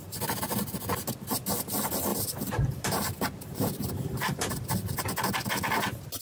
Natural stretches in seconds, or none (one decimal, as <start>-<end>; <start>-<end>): 0.6-2.1; 4.5-6.2